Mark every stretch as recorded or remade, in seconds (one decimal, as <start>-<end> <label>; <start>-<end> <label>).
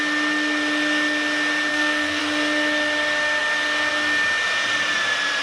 0.0-1.7 recorded; 1.7-2.2 remade; 2.2-5.4 recorded